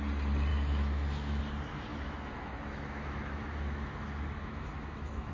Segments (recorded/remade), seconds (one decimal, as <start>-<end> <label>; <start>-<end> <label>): 0.0-0.5 recorded; 0.5-1.4 remade; 1.4-1.9 recorded; 1.9-5.3 remade